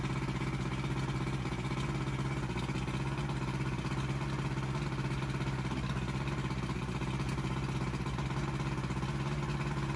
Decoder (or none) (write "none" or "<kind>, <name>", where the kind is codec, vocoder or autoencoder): none